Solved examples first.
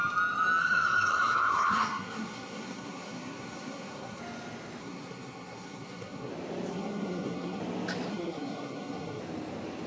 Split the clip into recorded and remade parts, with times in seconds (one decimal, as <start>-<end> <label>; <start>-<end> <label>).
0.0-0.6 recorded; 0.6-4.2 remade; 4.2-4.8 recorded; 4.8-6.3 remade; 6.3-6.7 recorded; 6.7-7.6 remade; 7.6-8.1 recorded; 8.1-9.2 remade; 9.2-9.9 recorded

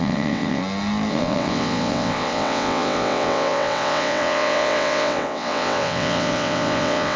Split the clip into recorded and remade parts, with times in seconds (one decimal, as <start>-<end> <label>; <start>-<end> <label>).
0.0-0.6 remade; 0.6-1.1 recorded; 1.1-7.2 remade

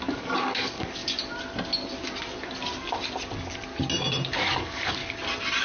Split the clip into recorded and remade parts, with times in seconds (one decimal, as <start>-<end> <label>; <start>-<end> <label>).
0.0-1.0 remade; 1.0-4.4 recorded; 4.4-5.0 remade; 5.0-5.6 recorded

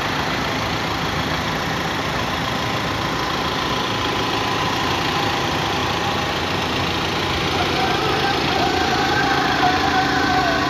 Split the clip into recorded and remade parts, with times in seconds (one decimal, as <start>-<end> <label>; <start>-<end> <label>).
0.0-10.7 recorded

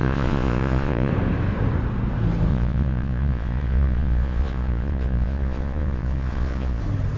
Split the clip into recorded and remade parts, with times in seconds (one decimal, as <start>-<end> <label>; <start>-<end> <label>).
0.0-1.1 remade; 1.1-2.5 recorded; 2.5-6.8 remade; 6.8-7.2 recorded

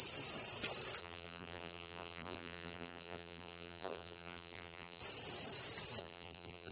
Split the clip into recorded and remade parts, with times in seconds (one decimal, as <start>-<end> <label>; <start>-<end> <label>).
0.0-1.0 recorded; 1.0-5.0 remade; 5.0-6.0 recorded; 6.0-6.7 remade

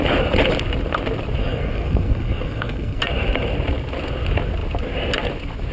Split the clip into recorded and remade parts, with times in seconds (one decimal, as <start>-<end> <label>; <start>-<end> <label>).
0.0-1.4 recorded; 1.4-3.0 remade; 3.0-5.7 recorded

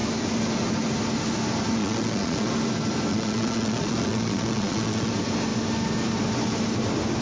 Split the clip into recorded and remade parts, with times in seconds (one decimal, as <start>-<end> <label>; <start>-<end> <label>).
0.0-1.8 recorded; 1.8-2.5 remade; 2.5-3.1 recorded; 3.1-5.1 remade; 5.1-7.2 recorded